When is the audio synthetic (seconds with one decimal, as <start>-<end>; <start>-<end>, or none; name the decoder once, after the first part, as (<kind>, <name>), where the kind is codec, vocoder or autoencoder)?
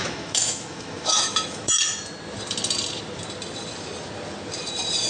0.0-1.8 (autoencoder, DAC-VAE)